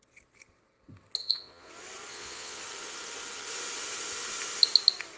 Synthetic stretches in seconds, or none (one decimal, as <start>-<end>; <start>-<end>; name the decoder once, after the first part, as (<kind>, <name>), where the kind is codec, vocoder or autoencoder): 1.2-1.7 (vocoder, Vocos); 2.1-2.6